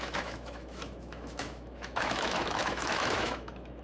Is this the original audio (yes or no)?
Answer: no